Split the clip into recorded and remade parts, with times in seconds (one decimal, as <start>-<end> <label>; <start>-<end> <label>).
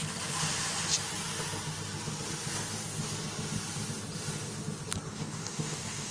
0.0-5.1 recorded; 5.1-6.1 remade